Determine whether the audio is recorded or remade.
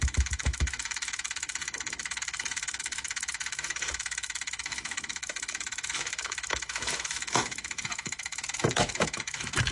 remade